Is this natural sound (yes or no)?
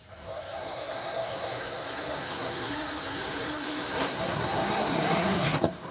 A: no